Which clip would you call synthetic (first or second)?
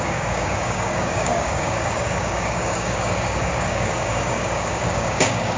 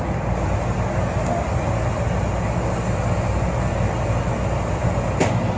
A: first